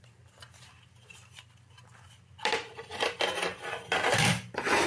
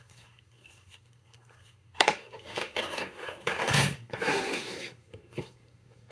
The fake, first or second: second